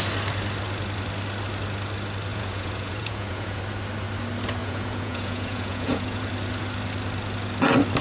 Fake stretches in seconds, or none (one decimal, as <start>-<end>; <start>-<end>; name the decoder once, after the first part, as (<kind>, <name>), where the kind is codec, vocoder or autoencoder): 2.3-3.6 (vocoder, Vocos); 4.6-6.3